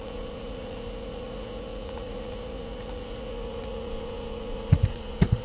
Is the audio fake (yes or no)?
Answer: yes